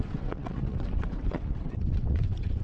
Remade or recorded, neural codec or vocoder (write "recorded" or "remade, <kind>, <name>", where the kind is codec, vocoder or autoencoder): remade, vocoder, WaveNeXt